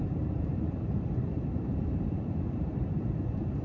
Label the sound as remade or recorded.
remade